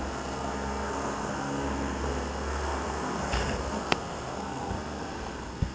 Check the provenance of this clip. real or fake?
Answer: fake